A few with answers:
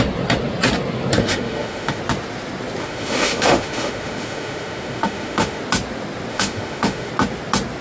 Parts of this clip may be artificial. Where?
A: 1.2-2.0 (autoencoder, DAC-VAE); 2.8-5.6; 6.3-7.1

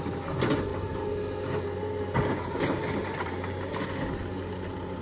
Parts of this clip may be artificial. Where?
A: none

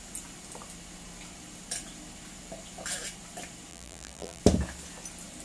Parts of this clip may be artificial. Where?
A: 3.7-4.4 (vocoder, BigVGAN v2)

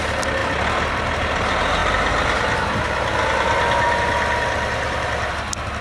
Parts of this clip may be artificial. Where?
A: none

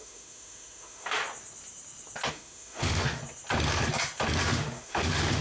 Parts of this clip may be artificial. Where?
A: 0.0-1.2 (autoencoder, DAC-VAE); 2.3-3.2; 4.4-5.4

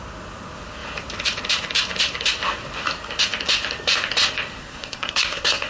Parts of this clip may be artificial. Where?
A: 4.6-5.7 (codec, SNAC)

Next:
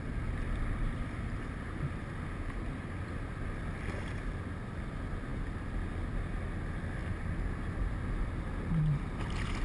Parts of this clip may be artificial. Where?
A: none